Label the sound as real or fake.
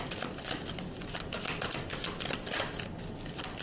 real